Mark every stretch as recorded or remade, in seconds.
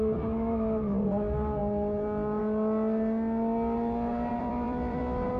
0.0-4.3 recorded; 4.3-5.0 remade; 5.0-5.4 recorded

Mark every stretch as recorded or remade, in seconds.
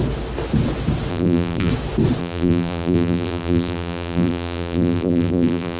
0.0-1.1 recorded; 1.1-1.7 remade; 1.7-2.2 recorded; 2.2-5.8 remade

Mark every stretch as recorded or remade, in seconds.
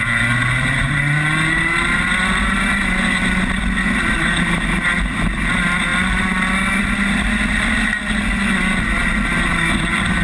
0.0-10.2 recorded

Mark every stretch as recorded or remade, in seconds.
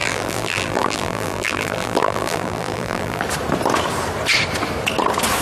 0.0-3.2 remade; 3.2-5.4 recorded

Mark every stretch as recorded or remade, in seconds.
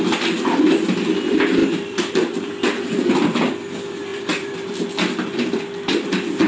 0.0-1.6 recorded; 1.6-2.5 remade; 2.5-4.1 recorded; 4.1-4.8 remade; 4.8-6.5 recorded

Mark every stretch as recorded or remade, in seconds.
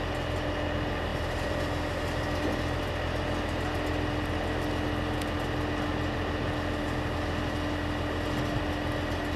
0.0-1.1 recorded; 1.1-1.6 remade; 1.6-9.4 recorded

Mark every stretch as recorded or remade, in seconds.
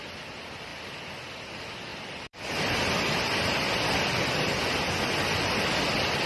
0.0-1.9 recorded; 1.9-4.6 remade; 4.6-6.3 recorded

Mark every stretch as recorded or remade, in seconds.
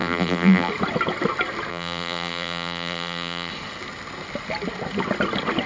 0.0-0.7 remade; 0.7-1.7 recorded; 1.7-3.5 remade; 3.5-5.7 recorded